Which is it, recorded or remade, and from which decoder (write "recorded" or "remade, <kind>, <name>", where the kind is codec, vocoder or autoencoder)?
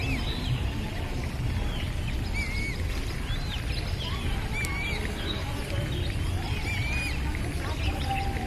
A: recorded